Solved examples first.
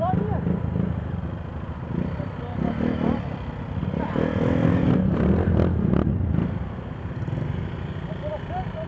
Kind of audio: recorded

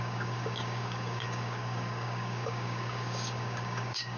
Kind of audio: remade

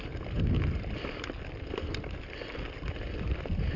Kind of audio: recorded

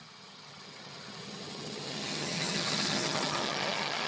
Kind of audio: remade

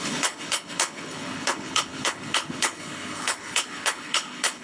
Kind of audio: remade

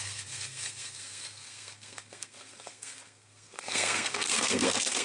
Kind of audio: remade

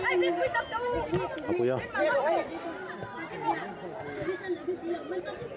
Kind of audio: recorded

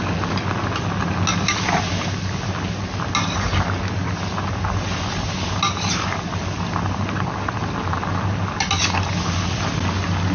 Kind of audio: recorded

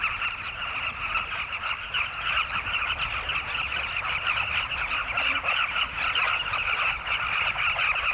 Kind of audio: recorded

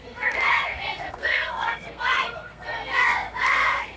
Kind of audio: remade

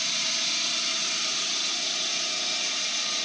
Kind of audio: recorded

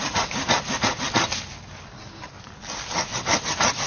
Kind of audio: recorded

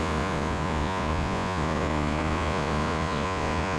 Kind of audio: remade